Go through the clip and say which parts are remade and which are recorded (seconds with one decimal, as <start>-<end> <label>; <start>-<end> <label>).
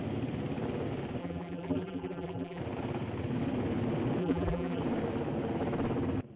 0.0-1.2 recorded; 1.2-2.6 remade; 2.6-4.2 recorded; 4.2-4.8 remade; 4.8-6.4 recorded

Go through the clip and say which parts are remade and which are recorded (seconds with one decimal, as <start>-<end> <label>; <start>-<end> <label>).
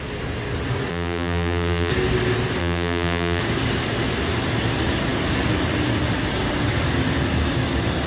0.0-0.9 recorded; 0.9-1.9 remade; 1.9-2.6 recorded; 2.6-3.4 remade; 3.4-8.1 recorded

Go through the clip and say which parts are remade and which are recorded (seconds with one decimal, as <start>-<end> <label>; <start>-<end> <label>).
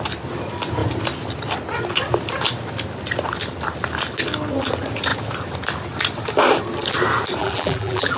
0.0-7.4 recorded; 7.4-8.2 remade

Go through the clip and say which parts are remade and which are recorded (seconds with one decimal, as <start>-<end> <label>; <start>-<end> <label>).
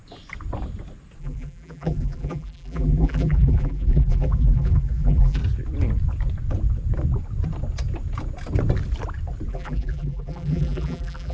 0.0-1.2 recorded; 1.2-5.4 remade; 5.4-9.5 recorded; 9.5-11.3 remade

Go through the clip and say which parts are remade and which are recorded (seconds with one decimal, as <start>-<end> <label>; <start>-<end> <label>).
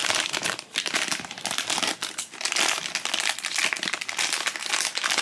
0.0-1.4 remade; 1.4-5.2 recorded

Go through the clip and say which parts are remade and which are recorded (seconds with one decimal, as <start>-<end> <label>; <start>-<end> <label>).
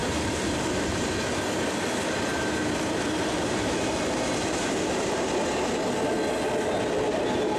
0.0-0.9 remade; 0.9-2.3 recorded; 2.3-5.3 remade; 5.3-7.6 recorded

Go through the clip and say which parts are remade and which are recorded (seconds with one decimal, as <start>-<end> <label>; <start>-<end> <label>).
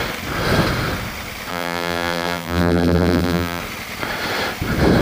0.0-1.5 recorded; 1.5-3.6 remade; 3.6-5.0 recorded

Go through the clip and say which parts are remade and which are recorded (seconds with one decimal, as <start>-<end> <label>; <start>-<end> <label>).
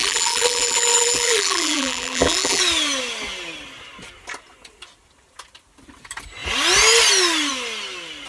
0.0-2.6 remade; 2.6-8.3 recorded